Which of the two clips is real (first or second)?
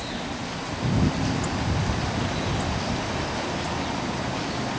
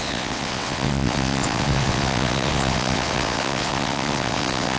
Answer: first